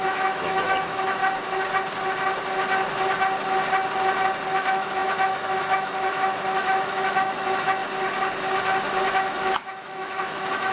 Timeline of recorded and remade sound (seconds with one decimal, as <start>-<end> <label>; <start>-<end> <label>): 0.0-1.2 remade; 1.2-4.5 recorded; 4.5-7.8 remade; 7.8-9.1 recorded; 9.1-10.7 remade